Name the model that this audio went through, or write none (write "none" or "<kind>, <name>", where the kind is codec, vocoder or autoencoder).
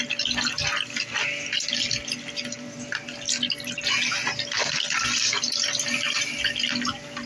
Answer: none